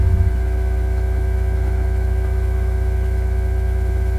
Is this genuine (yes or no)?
no